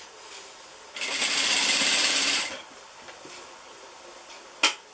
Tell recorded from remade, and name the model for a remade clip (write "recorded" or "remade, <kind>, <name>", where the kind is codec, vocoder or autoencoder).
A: recorded